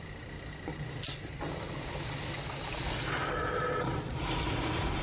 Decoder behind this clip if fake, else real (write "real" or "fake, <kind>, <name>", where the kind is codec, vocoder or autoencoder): fake, vocoder, BigVGAN v2